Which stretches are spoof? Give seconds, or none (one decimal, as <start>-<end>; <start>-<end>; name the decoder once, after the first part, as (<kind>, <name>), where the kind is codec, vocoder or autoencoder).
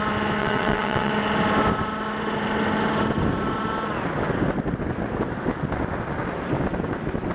0.4-1.1 (vocoder, WaveNeXt)